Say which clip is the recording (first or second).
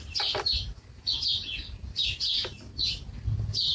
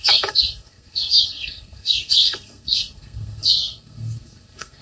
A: first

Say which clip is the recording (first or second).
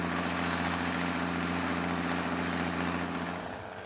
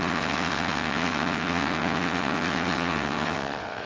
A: first